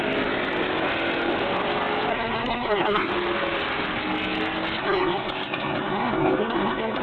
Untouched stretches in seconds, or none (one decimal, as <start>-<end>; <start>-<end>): 0.0-2.1; 3.1-4.8